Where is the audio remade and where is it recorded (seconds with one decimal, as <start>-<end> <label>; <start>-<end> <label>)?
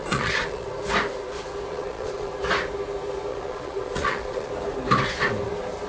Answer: 0.0-0.7 remade; 0.7-1.7 recorded; 1.7-2.3 remade; 2.3-3.3 recorded; 3.3-4.5 remade; 4.5-5.9 recorded